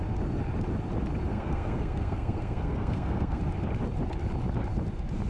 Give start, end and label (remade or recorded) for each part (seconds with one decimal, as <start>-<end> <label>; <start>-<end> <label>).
0.0-1.3 recorded; 1.3-3.4 remade; 3.4-5.3 recorded